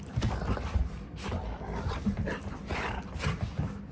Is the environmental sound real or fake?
real